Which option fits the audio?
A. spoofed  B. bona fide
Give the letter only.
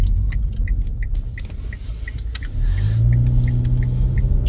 B